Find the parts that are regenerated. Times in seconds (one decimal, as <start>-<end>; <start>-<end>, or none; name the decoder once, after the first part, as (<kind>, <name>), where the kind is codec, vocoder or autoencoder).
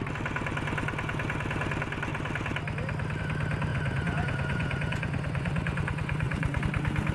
3.7-6.6 (vocoder, Vocos)